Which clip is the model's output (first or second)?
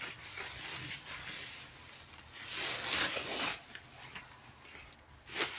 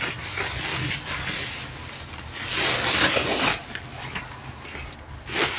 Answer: first